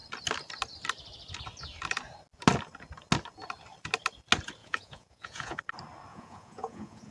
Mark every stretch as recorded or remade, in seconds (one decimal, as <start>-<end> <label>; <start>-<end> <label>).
0.0-4.6 recorded; 4.6-5.6 remade; 5.6-6.1 recorded; 6.1-7.1 remade